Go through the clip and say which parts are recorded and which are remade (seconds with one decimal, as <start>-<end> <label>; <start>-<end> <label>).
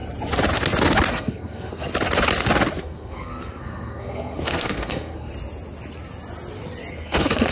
0.0-1.1 recorded; 1.1-1.9 remade; 1.9-2.8 recorded; 2.8-5.3 remade; 5.3-6.9 recorded; 6.9-7.5 remade